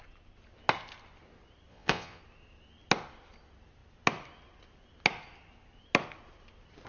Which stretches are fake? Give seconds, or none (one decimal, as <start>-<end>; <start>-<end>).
1.7-2.2